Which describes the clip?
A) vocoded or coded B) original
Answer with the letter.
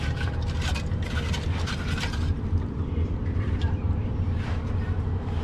A